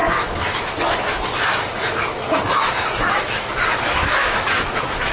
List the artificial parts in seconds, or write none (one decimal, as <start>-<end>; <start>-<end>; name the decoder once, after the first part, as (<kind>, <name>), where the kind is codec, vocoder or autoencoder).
0.0-5.1 (autoencoder, DAC-VAE)